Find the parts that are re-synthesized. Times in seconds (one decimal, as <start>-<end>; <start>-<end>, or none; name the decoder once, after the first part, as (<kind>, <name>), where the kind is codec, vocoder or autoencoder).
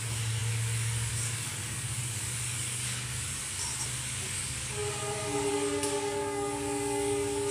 0.0-3.4 (codec, DAC); 4.0-7.5